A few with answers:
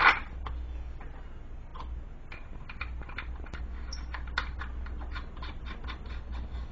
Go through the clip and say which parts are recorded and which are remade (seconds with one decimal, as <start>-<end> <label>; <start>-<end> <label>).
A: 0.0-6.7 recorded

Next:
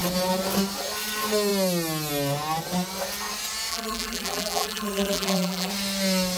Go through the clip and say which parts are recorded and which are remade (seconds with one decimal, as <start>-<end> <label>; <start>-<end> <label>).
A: 0.0-3.7 recorded; 3.7-5.7 remade; 5.7-6.4 recorded

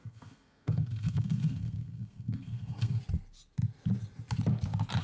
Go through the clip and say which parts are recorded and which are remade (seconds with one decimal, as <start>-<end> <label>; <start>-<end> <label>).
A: 0.0-3.0 remade; 3.0-5.0 recorded